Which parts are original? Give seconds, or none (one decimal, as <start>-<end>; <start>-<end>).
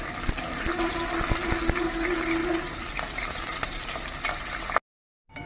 0.0-5.5